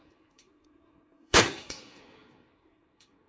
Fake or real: fake